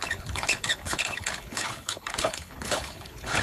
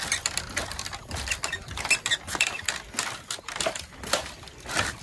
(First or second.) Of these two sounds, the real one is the second